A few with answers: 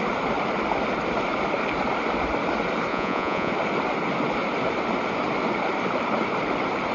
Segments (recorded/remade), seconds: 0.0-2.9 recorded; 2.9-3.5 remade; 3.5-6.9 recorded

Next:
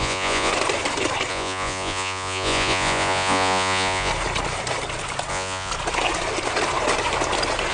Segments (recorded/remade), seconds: 0.0-0.5 remade; 0.5-1.3 recorded; 1.3-4.1 remade; 4.1-5.3 recorded; 5.3-5.7 remade; 5.7-7.7 recorded